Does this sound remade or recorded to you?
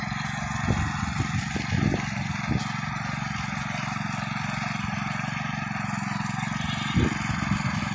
recorded